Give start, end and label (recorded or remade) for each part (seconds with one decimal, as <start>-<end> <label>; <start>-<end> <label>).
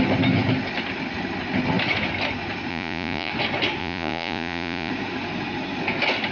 0.0-2.7 recorded; 2.7-3.3 remade; 3.3-3.8 recorded; 3.8-4.9 remade; 4.9-6.3 recorded